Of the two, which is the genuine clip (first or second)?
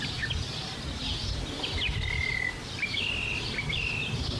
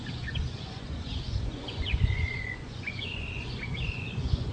first